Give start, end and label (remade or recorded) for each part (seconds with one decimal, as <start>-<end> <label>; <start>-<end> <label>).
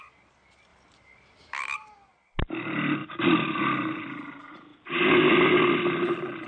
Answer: 0.0-0.7 recorded; 0.7-1.6 remade; 1.6-3.0 recorded; 3.0-4.2 remade; 4.2-4.7 recorded; 4.7-5.3 remade; 5.3-6.5 recorded